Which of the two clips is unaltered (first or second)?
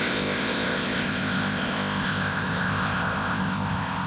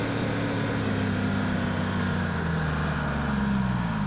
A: second